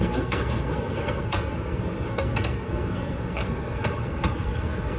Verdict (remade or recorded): remade